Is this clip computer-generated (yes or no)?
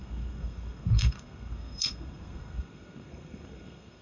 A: yes